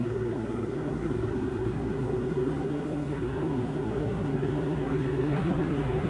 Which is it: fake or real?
fake